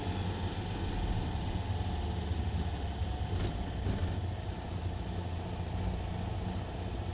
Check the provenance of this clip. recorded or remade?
recorded